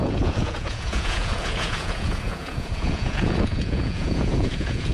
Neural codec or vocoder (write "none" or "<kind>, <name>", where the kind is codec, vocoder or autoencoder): vocoder, Vocos